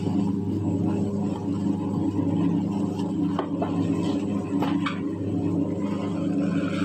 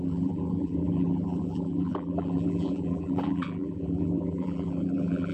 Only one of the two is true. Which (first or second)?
first